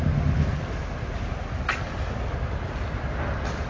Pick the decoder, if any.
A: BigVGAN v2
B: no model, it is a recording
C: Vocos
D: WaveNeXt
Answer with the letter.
B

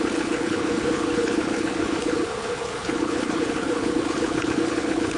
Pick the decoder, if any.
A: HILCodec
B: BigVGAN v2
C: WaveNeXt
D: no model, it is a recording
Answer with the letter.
A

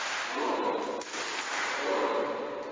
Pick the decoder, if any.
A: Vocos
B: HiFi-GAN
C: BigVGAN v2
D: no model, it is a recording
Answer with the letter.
D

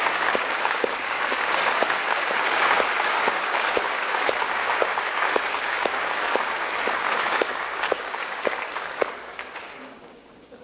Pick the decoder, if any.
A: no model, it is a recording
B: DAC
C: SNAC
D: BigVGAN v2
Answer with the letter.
B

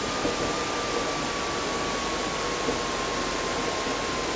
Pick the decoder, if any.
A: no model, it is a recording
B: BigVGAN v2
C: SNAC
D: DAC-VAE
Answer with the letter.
A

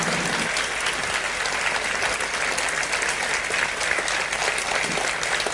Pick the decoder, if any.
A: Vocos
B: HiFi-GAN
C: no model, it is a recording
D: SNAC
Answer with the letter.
C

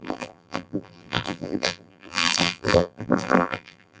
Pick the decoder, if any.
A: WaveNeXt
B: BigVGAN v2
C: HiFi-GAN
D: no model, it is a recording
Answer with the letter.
B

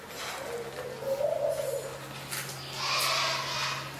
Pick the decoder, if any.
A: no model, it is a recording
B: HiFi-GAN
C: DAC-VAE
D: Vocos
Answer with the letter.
A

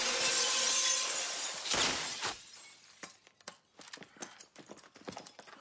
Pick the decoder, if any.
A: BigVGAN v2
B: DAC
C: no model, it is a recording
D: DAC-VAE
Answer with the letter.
C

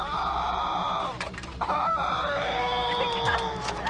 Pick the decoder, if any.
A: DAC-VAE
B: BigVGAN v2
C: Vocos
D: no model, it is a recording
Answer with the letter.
B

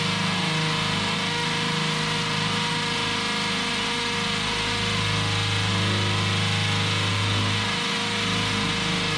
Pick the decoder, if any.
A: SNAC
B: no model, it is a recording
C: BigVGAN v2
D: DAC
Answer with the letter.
B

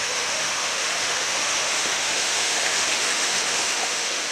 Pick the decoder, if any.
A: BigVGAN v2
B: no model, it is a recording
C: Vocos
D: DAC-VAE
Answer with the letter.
D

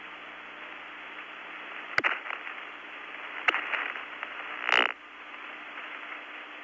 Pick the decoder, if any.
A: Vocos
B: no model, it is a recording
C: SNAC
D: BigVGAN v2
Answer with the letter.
B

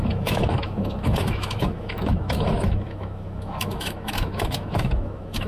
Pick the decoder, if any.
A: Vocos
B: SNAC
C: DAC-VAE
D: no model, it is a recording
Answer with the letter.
C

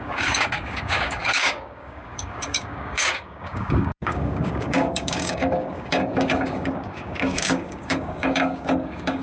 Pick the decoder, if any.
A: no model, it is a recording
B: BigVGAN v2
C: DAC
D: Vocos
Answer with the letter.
C